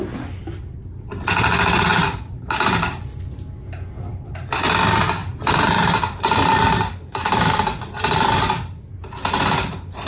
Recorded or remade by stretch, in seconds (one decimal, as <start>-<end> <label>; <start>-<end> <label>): 0.0-1.9 recorded; 1.9-3.0 remade; 3.0-5.2 recorded; 5.2-7.5 remade; 7.5-10.1 recorded